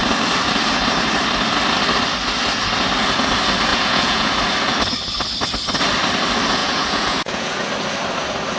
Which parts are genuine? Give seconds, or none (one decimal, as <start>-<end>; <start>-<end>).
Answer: 0.0-3.7; 4.3-6.6; 7.7-8.6